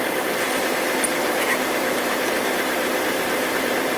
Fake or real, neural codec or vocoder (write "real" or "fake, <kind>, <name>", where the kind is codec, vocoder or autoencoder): fake, vocoder, BigVGAN v2